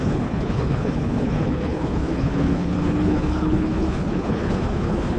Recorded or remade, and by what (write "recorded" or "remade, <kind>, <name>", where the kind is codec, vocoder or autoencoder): remade, codec, HILCodec